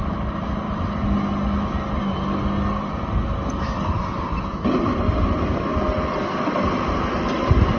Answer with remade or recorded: recorded